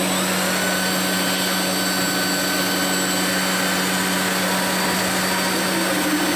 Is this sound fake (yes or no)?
no